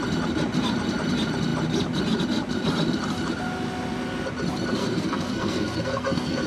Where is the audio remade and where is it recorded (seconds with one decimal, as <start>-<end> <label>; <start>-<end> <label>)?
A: 0.0-4.8 recorded; 4.8-6.5 remade